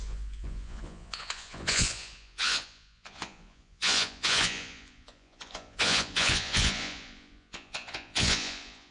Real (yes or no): no